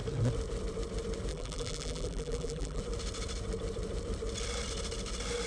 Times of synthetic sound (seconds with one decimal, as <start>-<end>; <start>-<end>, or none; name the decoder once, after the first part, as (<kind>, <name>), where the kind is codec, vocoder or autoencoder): 1.3-2.8 (vocoder, BigVGAN v2)